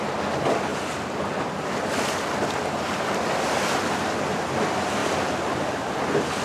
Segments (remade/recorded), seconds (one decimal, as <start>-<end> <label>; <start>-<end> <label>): 0.0-6.4 recorded

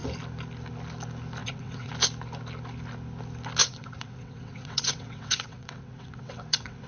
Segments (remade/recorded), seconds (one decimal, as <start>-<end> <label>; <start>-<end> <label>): 0.0-1.4 recorded; 1.4-1.9 remade; 1.9-3.6 recorded; 3.6-6.9 remade

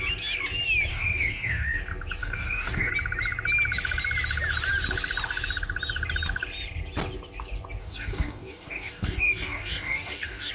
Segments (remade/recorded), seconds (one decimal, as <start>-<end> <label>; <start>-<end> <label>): 0.0-0.9 recorded; 0.9-1.8 remade; 1.8-2.2 recorded; 2.2-2.9 remade; 2.9-7.8 recorded; 7.8-10.5 remade

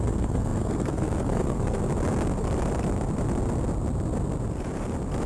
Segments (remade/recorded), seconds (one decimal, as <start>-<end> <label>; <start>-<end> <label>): 0.0-1.8 remade; 1.8-5.3 recorded

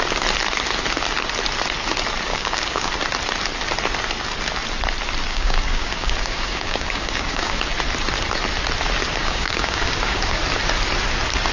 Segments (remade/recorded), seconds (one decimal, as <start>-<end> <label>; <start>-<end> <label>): 0.0-2.3 recorded; 2.3-2.9 remade; 2.9-5.3 recorded; 5.3-7.6 remade; 7.6-9.2 recorded; 9.2-10.4 remade; 10.4-11.5 recorded

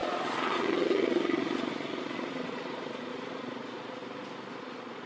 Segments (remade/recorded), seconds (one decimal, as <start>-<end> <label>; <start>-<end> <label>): 0.0-4.0 remade; 4.0-4.6 recorded; 4.6-5.1 remade